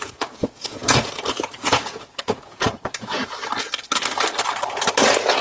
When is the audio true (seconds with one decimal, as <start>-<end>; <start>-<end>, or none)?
3.2-5.4